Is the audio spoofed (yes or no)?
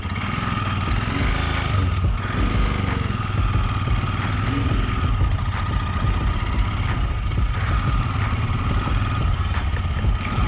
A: no